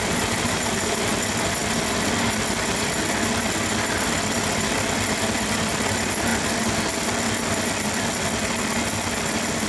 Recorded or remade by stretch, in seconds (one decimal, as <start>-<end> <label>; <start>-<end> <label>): 0.0-1.1 remade; 1.1-9.7 recorded